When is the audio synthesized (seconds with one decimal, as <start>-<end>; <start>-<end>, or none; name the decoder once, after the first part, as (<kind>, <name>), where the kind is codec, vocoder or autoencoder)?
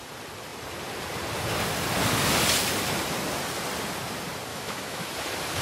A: 4.5-5.1 (autoencoder, DAC-VAE)